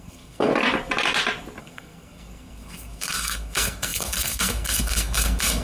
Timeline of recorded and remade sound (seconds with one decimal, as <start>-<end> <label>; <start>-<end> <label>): 0.0-0.5 remade; 0.5-1.6 recorded; 1.6-5.6 remade